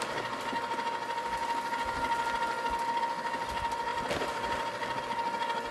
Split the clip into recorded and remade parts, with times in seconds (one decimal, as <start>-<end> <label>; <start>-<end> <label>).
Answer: 0.0-3.9 recorded; 3.9-5.0 remade; 5.0-5.7 recorded